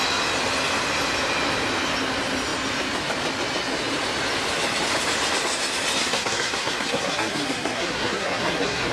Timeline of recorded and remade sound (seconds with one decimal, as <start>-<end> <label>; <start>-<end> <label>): 0.0-6.0 recorded; 6.0-8.9 remade